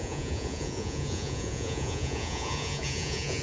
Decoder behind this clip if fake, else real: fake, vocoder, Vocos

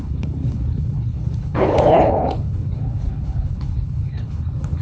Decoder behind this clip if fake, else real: fake, codec, HILCodec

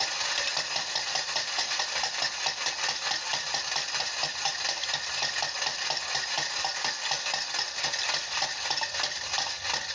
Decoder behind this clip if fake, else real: real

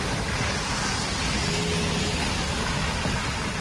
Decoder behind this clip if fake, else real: real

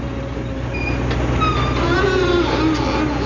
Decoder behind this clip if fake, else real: real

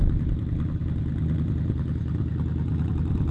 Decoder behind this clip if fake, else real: real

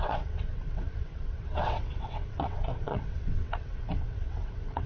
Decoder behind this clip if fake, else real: fake, vocoder, WaveNeXt